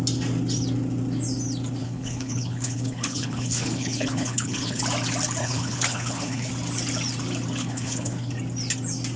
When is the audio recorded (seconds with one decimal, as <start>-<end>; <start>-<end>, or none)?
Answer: 0.0-1.8; 4.8-5.4; 6.5-7.6; 8.3-9.2